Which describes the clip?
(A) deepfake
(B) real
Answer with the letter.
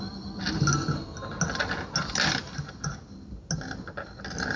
B